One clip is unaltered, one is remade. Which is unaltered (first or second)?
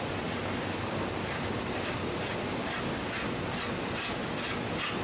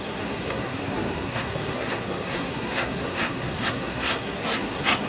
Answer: first